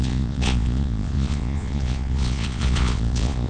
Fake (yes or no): yes